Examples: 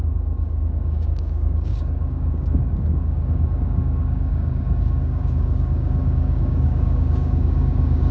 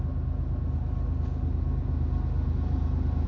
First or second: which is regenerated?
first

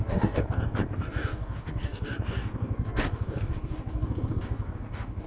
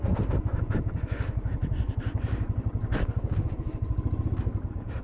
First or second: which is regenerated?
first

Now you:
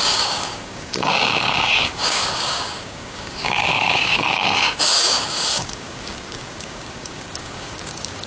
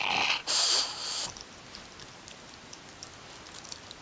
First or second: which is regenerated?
first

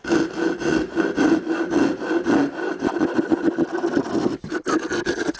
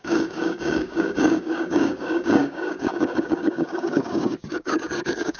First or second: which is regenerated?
second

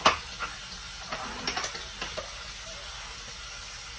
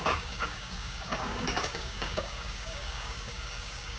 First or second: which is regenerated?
second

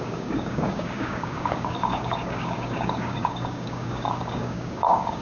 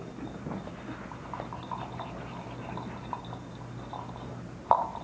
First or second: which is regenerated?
first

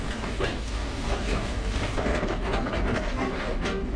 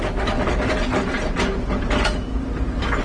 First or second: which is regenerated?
first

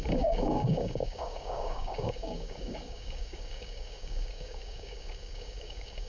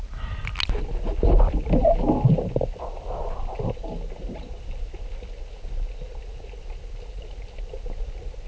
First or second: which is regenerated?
first